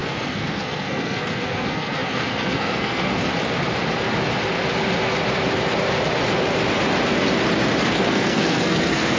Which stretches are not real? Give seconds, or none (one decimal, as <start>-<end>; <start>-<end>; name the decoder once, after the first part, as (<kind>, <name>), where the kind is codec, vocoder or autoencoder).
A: 0.0-3.3 (codec, SNAC); 7.9-9.2